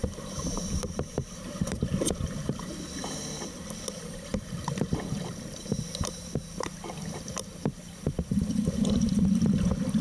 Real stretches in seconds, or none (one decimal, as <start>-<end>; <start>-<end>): 2.7-4.3; 8.4-10.0